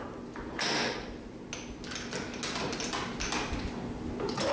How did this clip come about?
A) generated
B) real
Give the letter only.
B